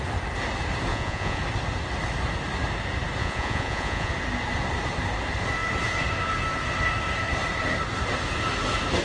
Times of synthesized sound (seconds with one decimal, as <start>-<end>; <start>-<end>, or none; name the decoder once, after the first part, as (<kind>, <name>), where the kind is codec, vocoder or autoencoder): 0.9-1.4 (vocoder, Vocos); 3.2-4.1